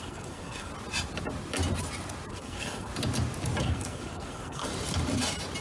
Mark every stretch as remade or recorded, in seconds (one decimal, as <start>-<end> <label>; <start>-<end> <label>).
0.0-0.7 remade; 0.7-2.3 recorded; 2.3-2.9 remade; 2.9-3.6 recorded; 3.6-4.7 remade; 4.7-5.6 recorded